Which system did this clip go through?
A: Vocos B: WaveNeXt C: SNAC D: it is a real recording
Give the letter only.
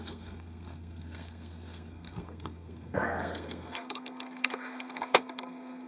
C